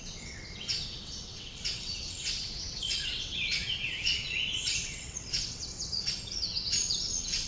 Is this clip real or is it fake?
fake